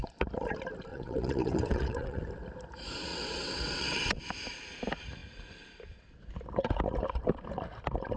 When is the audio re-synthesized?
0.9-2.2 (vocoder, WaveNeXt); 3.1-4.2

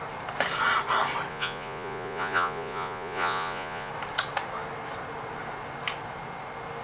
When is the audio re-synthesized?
1.3-3.9 (vocoder, Vocos)